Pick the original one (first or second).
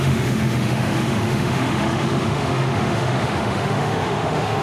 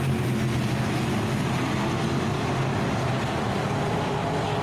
second